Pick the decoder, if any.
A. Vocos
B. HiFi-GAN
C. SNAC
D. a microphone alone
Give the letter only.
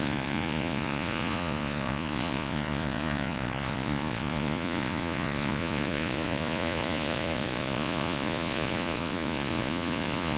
A